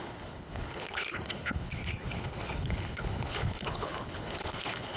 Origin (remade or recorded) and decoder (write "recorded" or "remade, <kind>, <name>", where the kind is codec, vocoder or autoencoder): remade, codec, HILCodec